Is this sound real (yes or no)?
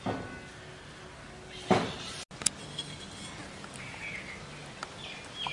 yes